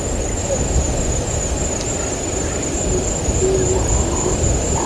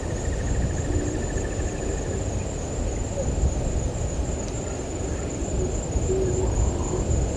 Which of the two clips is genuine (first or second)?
first